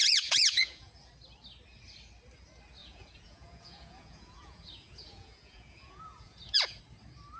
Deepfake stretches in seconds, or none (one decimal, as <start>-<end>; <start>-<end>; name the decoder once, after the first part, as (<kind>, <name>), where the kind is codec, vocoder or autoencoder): 0.0-1.1 (vocoder, Vocos); 2.8-6.8